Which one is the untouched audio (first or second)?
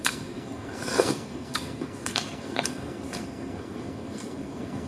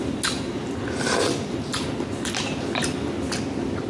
second